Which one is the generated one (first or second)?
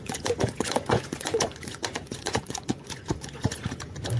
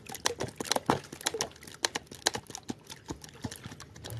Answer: first